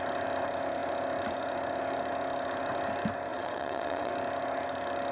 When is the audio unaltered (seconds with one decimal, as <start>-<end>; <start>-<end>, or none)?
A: 0.0-3.3; 4.1-5.1